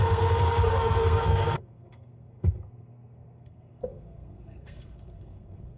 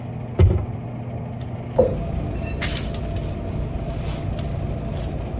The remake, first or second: first